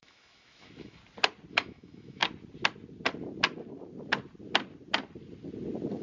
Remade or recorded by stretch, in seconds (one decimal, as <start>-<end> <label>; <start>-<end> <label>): 0.0-1.0 remade; 1.0-1.5 recorded; 1.5-2.2 remade; 2.2-6.0 recorded